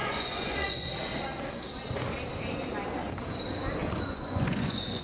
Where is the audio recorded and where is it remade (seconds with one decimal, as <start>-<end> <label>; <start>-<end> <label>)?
0.0-0.9 remade; 0.9-3.8 recorded; 3.8-5.0 remade